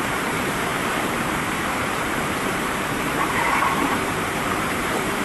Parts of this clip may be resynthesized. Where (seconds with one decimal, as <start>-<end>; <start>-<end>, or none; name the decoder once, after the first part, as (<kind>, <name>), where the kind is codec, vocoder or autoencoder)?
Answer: 0.0-5.2 (vocoder, BigVGAN v2)